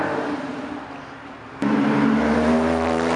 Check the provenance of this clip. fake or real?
real